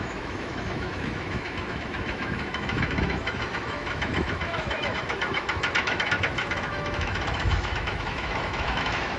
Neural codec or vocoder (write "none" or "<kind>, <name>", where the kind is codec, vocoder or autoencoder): autoencoder, DAC-VAE